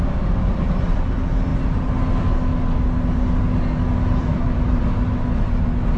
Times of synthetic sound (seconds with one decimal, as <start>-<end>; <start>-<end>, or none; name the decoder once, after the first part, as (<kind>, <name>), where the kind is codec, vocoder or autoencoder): 4.2-4.8 (vocoder, BigVGAN v2)